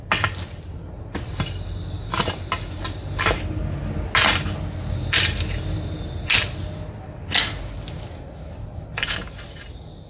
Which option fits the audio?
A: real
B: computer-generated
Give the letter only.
A